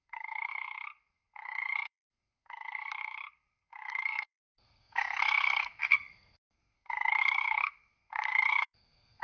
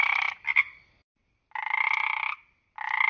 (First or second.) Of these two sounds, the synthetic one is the first